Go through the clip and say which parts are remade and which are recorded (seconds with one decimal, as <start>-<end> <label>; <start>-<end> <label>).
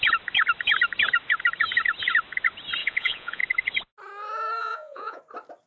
0.0-2.8 recorded; 2.8-3.4 remade; 3.4-4.6 recorded; 4.6-5.2 remade; 5.2-5.7 recorded